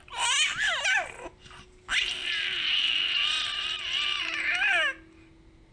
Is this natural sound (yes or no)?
yes